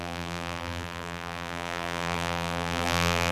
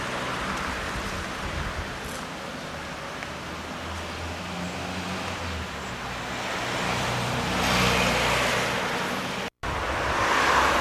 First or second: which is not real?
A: first